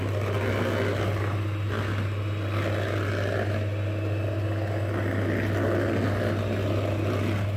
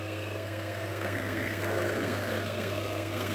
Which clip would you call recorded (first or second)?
first